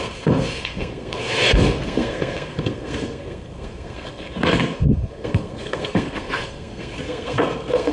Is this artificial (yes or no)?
yes